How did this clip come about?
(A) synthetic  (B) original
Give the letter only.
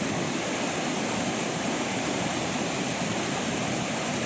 B